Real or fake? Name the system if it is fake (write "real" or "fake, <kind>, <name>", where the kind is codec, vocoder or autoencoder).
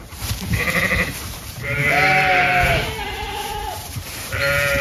fake, vocoder, BigVGAN v2